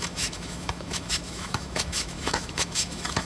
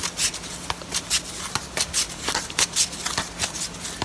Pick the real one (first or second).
second